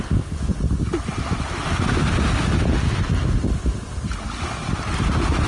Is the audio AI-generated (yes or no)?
no